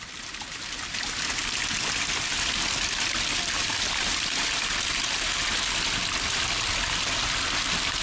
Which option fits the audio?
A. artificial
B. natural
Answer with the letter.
B